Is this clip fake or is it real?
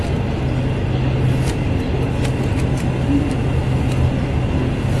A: real